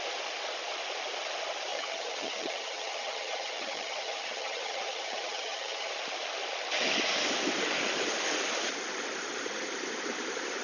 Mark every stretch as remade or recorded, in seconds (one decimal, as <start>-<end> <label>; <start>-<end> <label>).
0.0-1.7 recorded; 1.7-5.9 remade; 5.9-10.6 recorded

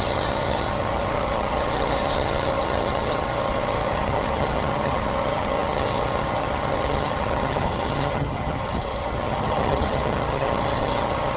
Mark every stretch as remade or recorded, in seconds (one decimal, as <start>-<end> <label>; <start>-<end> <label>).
0.0-11.4 remade

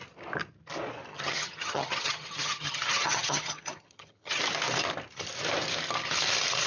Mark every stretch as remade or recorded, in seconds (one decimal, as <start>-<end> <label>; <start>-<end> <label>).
0.0-1.1 recorded; 1.1-4.4 remade; 4.4-6.7 recorded